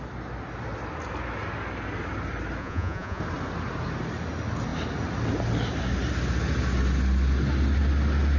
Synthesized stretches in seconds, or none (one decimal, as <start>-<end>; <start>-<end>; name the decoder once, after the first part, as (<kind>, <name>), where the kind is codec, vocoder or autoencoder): 2.6-3.2 (vocoder, Vocos)